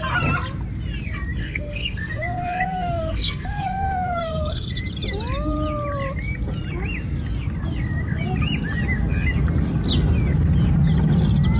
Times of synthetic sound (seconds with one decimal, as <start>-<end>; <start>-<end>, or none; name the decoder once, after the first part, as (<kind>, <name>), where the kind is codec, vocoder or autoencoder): 1.4-4.8 (codec, SNAC)